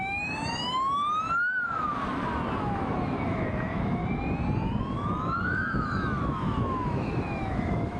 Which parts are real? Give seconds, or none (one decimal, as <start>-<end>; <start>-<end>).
1.0-2.6; 4.0-4.8